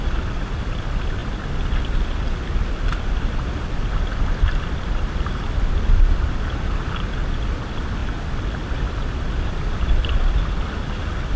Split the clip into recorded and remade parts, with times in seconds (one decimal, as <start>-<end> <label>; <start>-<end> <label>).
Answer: 0.0-11.4 recorded